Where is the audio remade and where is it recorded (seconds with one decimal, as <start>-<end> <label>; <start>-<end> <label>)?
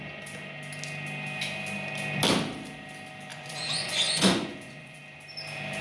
0.0-3.3 recorded; 3.3-5.0 remade; 5.0-5.8 recorded